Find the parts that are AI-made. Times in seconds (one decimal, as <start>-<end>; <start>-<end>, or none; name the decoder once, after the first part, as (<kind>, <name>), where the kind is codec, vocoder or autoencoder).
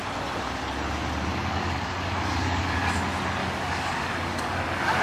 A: 1.3-2.9 (codec, DAC); 3.4-5.0